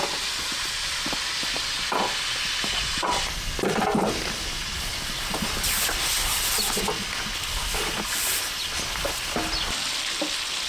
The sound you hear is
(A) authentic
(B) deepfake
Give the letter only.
A